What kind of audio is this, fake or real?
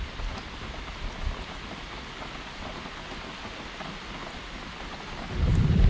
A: real